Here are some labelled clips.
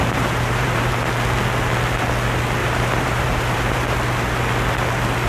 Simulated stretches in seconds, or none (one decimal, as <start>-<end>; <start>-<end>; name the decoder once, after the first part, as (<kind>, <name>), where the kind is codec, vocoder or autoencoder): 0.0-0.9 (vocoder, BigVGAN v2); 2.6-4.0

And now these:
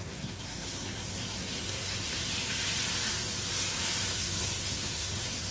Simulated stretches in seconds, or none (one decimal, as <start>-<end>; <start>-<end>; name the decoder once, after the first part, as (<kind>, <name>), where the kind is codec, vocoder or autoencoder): 0.0-2.3 (codec, SNAC); 4.1-5.5

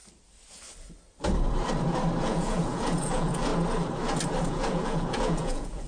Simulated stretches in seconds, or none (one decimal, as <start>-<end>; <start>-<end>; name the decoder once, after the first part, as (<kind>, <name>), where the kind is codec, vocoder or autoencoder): 2.2-3.5 (vocoder, Vocos); 4.4-5.9

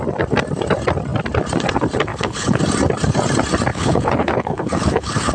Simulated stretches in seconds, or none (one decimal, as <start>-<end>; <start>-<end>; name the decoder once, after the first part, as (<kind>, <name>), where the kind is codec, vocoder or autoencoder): 2.1-2.6 (codec, HILCodec); 3.7-5.3